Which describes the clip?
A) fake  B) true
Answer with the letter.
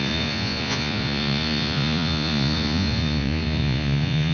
A